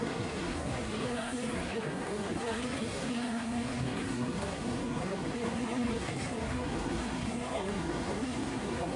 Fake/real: fake